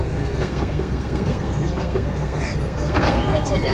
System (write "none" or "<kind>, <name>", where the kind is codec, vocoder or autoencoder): codec, SNAC